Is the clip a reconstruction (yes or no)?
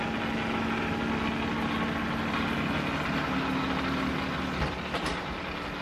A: no